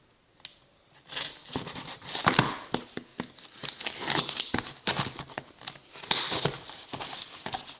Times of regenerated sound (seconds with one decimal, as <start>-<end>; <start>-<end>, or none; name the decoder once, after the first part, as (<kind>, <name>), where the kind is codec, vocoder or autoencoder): 1.4-2.4 (vocoder, BigVGAN v2)